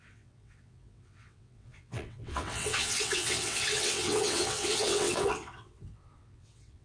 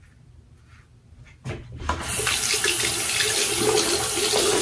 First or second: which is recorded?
second